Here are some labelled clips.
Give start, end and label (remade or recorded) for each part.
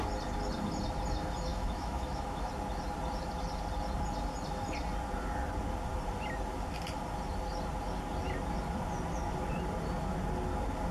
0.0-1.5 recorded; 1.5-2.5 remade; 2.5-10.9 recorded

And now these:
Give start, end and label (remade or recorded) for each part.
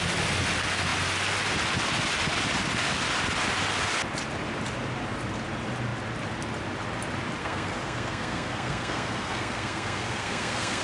0.0-7.4 recorded; 7.4-10.8 remade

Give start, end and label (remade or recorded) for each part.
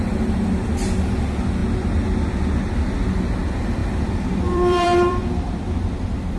0.0-3.8 recorded; 3.8-6.4 remade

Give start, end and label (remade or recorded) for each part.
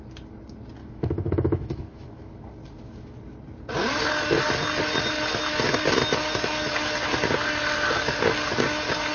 0.0-0.8 recorded; 0.8-2.3 remade; 2.3-9.1 recorded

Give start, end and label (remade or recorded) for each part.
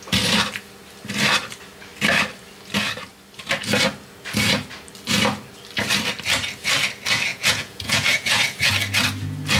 0.0-7.3 recorded; 7.3-8.7 remade; 8.7-9.6 recorded